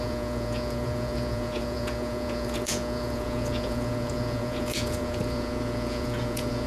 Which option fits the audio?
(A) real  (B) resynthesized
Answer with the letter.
B